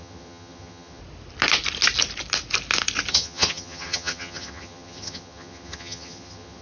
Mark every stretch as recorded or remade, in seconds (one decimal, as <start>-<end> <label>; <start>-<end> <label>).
0.0-1.0 remade; 1.0-3.1 recorded; 3.1-6.6 remade

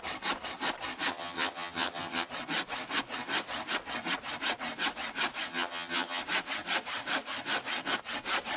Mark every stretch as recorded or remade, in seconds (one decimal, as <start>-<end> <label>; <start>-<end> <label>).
0.0-1.1 recorded; 1.1-2.3 remade; 2.3-5.5 recorded; 5.5-6.2 remade; 6.2-8.6 recorded

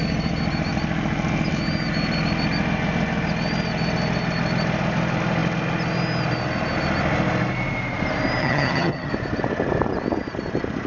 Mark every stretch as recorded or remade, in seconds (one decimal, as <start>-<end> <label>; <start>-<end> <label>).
0.0-8.4 recorded; 8.4-9.1 remade; 9.1-10.9 recorded

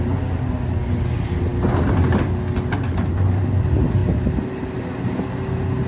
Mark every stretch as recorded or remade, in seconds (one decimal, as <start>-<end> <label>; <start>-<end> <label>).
0.0-5.9 recorded

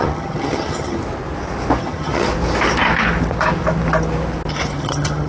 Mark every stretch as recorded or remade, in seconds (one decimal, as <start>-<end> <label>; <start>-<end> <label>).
0.0-1.0 remade; 1.0-1.8 recorded; 1.8-2.3 remade; 2.3-4.5 recorded; 4.5-5.3 remade

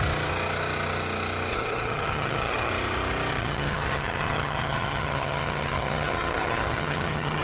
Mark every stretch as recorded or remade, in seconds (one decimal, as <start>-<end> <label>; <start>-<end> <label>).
0.0-1.5 recorded; 1.5-2.7 remade; 2.7-3.3 recorded; 3.3-7.4 remade